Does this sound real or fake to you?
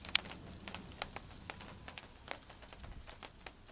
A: real